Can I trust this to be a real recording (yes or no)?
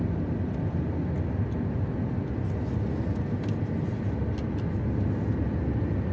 yes